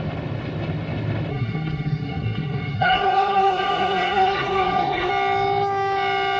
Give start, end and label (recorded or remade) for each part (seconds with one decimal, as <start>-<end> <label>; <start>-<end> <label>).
0.0-1.3 recorded; 1.3-5.1 remade; 5.1-6.4 recorded